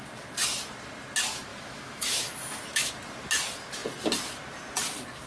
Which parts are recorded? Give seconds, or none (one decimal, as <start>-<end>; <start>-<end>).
0.0-1.5; 2.9-5.3